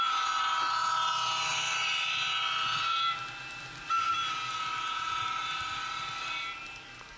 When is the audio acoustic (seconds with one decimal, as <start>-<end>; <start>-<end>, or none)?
0.0-7.2